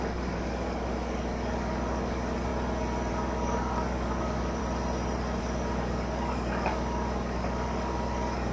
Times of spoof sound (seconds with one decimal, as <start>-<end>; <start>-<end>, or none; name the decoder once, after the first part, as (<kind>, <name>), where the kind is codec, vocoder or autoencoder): 0.0-2.5 (codec, DAC); 3.1-4.6; 5.4-8.5